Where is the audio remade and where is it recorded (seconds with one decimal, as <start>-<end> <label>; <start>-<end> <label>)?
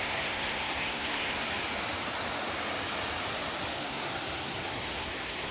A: 0.0-1.5 remade; 1.5-3.8 recorded; 3.8-5.5 remade